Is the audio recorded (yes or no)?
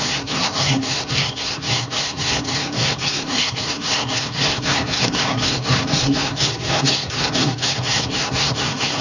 no